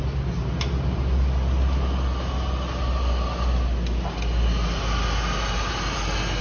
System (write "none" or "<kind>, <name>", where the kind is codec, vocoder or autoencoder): none